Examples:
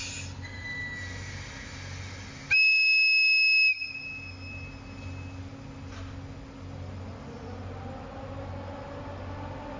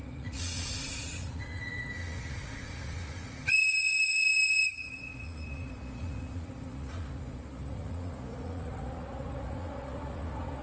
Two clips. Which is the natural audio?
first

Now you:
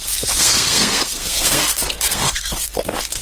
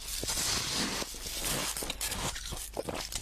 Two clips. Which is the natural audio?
second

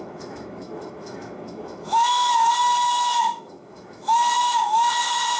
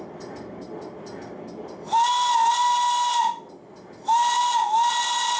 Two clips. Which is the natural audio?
second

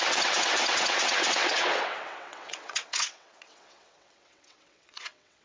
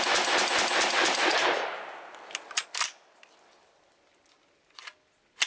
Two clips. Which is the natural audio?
second